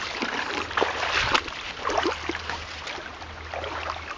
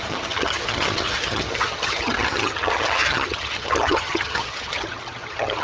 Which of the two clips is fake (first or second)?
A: second